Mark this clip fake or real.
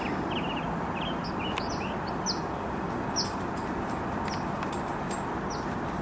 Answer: real